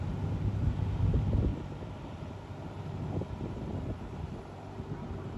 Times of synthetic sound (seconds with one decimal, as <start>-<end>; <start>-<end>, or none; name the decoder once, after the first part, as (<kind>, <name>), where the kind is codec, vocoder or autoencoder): 0.0-1.5 (vocoder, BigVGAN v2); 2.7-5.4